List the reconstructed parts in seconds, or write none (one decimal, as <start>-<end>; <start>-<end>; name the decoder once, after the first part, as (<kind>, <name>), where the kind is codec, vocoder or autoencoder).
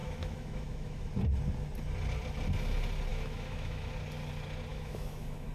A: 0.0-1.1 (autoencoder, DAC-VAE); 3.1-3.9; 4.7-5.5